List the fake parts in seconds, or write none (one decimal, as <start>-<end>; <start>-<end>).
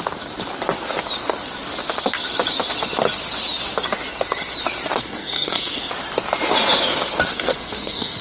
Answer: 5.0-5.9; 7.3-8.2